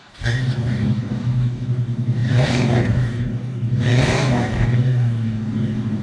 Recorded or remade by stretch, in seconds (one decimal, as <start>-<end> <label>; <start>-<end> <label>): 0.0-6.0 remade